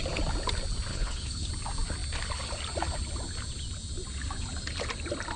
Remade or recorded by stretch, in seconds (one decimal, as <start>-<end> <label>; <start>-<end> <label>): 0.0-0.9 recorded; 0.9-1.5 remade; 1.5-5.4 recorded